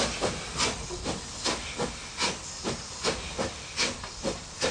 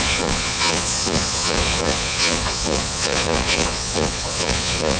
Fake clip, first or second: second